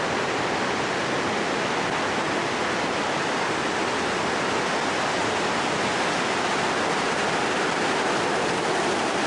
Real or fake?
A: real